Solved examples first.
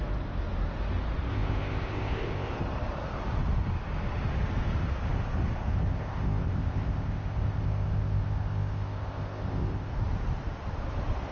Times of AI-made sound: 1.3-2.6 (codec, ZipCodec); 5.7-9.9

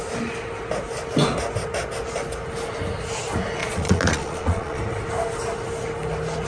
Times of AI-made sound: 3.6-4.8 (vocoder, Vocos)